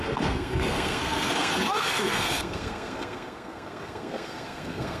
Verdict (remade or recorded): remade